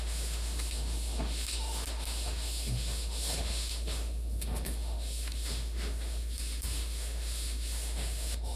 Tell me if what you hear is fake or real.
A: fake